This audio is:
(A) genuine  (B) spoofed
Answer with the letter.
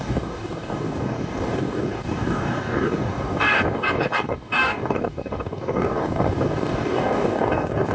B